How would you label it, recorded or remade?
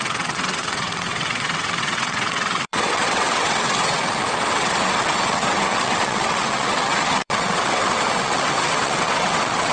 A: remade